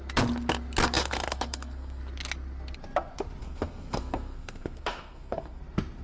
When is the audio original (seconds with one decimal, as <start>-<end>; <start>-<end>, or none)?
0.0-1.0; 2.0-3.4; 5.6-6.0